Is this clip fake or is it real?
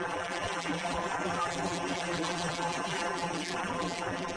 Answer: fake